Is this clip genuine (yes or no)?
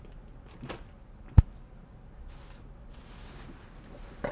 yes